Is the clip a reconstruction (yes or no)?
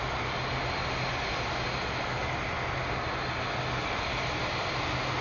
no